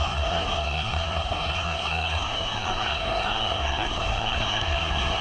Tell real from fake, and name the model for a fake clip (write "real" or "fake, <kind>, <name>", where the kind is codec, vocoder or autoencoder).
fake, codec, SNAC